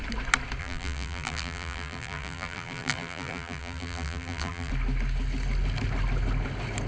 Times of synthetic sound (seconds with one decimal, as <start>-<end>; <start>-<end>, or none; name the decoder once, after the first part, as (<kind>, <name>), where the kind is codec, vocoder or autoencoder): 0.6-4.7 (vocoder, BigVGAN v2)